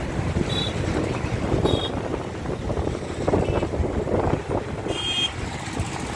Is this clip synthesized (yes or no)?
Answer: no